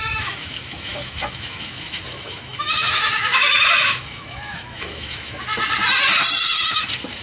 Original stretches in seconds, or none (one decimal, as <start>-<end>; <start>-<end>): 5.5-6.4

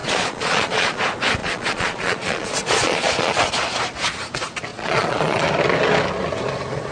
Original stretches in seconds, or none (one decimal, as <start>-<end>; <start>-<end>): 1.0-1.4; 3.5-4.7; 5.5-6.9

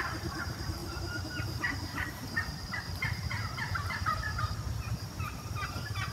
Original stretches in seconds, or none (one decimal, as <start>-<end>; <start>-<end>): none

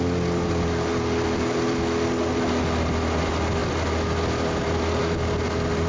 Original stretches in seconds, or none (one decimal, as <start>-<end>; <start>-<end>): 0.0-5.9

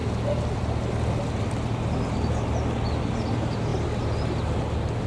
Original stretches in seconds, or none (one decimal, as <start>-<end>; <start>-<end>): 0.0-5.1

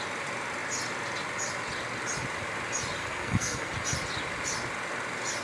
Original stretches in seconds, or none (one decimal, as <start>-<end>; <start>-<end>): 0.0-3.0; 3.7-5.4